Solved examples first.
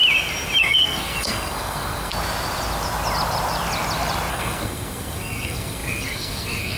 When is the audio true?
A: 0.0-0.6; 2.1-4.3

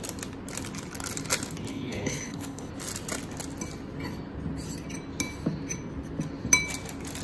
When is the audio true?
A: 0.0-1.7; 2.7-7.2

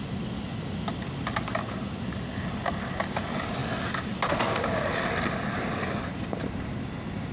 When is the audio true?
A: 0.0-7.3

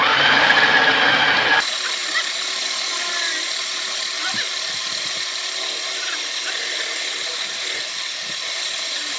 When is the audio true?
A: 0.0-9.2